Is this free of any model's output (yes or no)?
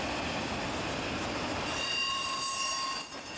yes